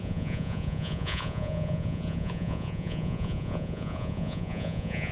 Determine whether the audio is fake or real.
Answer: fake